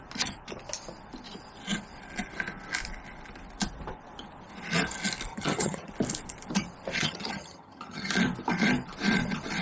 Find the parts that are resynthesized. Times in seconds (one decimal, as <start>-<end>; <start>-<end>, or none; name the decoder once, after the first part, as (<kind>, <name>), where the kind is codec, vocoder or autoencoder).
5.3-5.9 (vocoder, HiFi-GAN); 7.0-8.1